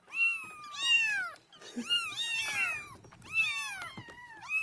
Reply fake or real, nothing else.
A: real